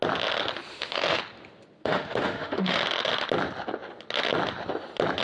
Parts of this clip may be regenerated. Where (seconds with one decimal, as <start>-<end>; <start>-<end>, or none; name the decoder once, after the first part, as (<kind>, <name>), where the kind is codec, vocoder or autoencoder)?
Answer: 0.7-1.2 (autoencoder, DAC-VAE); 1.8-2.8